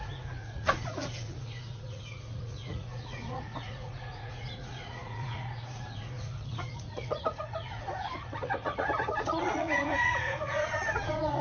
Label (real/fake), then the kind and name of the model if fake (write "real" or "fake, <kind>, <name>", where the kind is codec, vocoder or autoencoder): fake, vocoder, Vocos